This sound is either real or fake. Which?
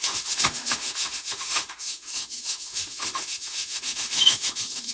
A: fake